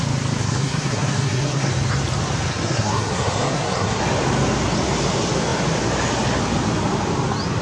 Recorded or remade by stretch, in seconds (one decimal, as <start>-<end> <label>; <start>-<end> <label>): 0.0-0.4 recorded; 0.4-1.7 remade; 1.7-2.5 recorded; 2.5-4.0 remade; 4.0-7.6 recorded